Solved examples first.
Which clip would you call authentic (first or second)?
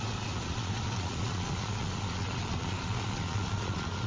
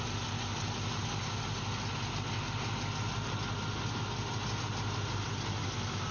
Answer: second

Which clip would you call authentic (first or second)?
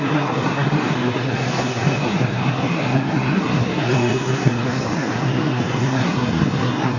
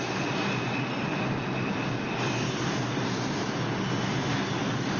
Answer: second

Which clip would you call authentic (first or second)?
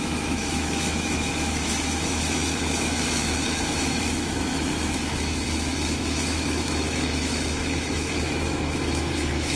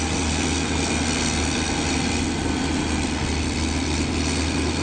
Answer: second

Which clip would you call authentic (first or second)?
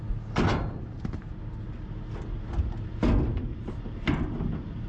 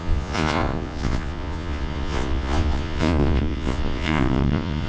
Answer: first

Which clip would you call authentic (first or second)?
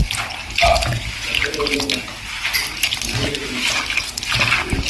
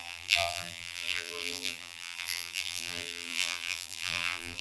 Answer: first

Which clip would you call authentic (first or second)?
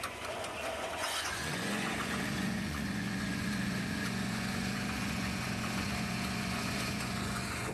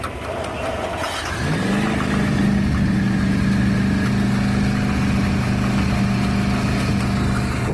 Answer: second